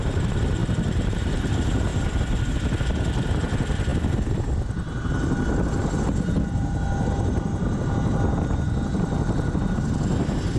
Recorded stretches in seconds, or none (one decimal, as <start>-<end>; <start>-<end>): 0.0-0.6; 1.5-10.6